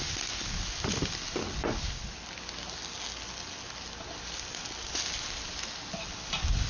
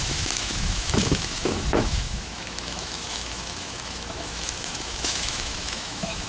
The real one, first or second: first